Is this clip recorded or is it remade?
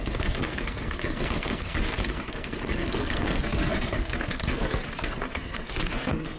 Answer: remade